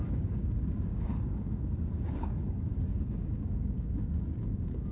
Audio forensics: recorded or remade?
remade